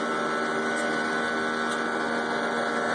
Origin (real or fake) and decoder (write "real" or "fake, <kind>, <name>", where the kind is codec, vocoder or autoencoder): real